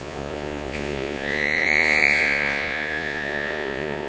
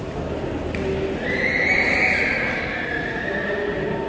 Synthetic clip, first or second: first